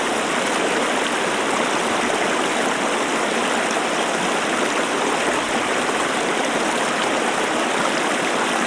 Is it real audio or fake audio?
real